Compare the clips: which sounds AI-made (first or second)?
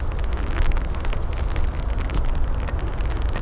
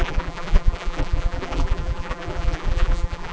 second